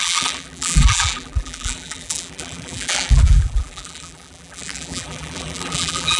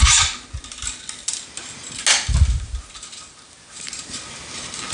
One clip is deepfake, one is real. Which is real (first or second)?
second